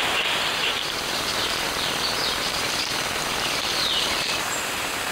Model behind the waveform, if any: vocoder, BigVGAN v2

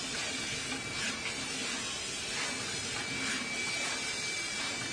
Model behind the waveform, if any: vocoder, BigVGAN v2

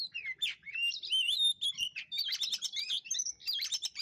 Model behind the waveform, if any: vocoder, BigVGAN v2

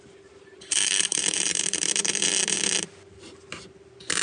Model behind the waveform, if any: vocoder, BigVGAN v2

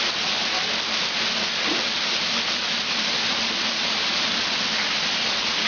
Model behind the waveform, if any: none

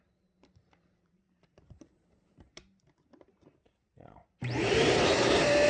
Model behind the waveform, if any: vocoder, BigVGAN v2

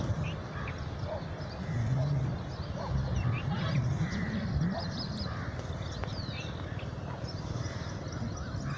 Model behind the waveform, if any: vocoder, BigVGAN v2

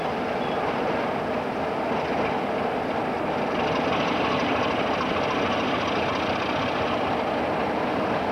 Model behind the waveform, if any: none